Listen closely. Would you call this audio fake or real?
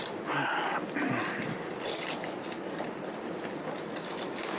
real